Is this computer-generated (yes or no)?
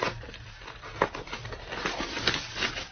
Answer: no